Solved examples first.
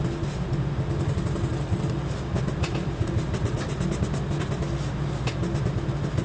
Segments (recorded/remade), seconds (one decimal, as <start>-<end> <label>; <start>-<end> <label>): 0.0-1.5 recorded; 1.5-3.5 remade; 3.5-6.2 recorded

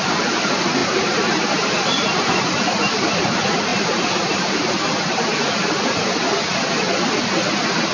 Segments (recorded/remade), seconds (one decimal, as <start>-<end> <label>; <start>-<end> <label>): 0.0-0.8 recorded; 0.8-2.4 remade; 2.4-3.7 recorded; 3.7-5.3 remade; 5.3-7.9 recorded

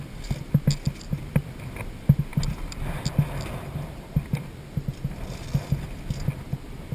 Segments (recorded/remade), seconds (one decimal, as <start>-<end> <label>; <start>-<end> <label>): 0.0-6.9 recorded